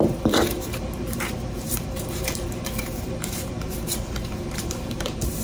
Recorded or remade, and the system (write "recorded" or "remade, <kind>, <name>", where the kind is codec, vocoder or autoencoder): remade, vocoder, BigVGAN v2